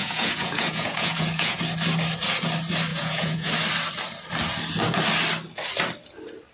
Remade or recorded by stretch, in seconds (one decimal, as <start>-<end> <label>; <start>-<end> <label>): 0.0-1.6 remade; 1.6-2.9 recorded; 2.9-3.5 remade; 3.5-6.5 recorded